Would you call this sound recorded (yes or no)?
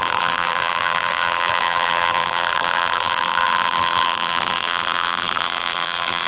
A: no